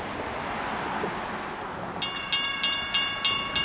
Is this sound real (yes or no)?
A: yes